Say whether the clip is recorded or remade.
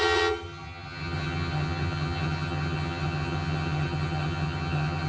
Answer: remade